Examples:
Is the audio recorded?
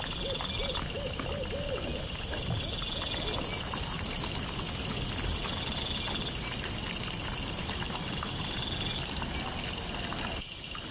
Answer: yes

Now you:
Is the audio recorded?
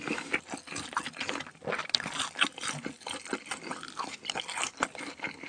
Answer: yes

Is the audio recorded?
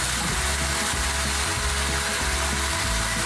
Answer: yes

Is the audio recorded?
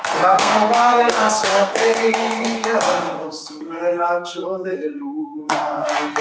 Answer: no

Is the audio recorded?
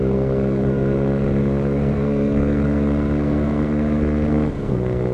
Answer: no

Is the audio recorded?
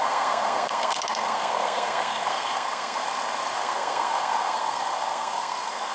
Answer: no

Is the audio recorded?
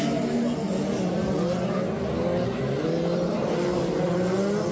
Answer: yes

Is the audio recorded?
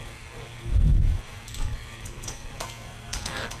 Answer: no